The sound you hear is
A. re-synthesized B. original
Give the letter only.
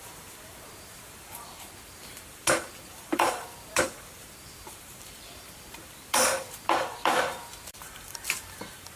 A